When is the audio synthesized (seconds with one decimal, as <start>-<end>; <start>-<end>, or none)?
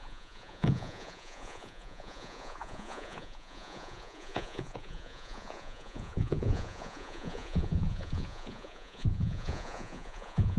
0.0-10.6